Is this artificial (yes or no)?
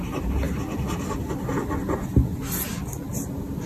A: no